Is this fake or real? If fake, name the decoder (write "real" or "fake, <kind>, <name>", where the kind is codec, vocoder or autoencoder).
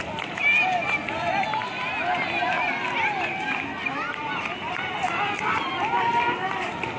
real